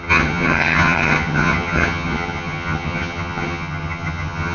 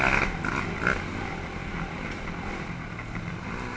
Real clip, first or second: second